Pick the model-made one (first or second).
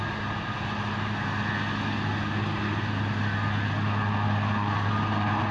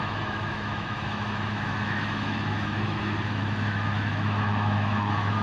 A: second